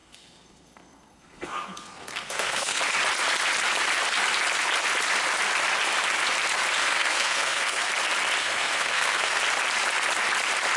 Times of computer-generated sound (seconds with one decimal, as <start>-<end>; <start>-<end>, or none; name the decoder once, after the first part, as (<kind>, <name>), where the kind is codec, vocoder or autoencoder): 0.0-2.8 (codec, SNAC); 6.8-7.9; 8.4-9.4